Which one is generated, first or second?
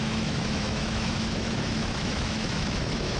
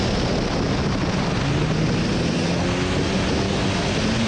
first